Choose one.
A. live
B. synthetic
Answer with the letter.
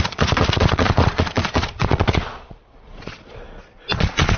B